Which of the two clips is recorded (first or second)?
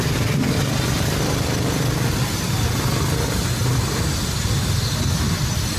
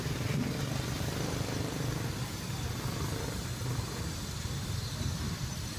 first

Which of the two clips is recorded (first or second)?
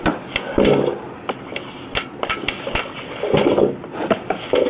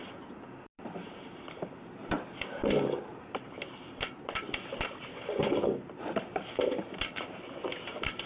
first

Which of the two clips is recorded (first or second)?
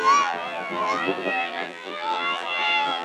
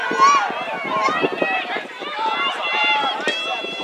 second